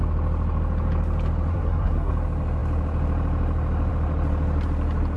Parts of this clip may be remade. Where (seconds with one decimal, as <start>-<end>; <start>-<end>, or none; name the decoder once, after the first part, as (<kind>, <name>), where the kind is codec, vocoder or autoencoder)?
1.5-2.1 (codec, SNAC)